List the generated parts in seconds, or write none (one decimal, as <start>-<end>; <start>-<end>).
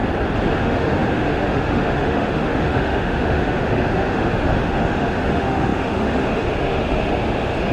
0.6-7.7